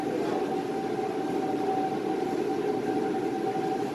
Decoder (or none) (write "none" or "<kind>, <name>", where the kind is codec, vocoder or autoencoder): none